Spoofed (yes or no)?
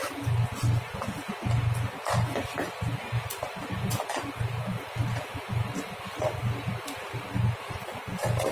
no